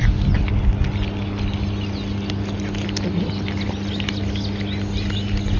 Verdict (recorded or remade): recorded